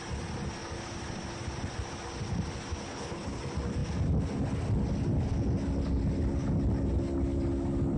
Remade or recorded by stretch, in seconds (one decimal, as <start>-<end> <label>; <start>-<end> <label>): 0.0-2.9 recorded; 2.9-3.4 remade; 3.4-8.0 recorded